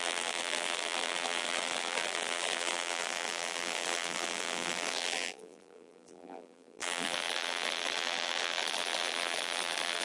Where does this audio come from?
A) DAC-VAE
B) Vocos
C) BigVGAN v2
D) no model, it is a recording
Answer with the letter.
C